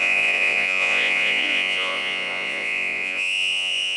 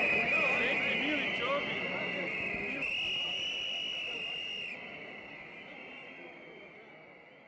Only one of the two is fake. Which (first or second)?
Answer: first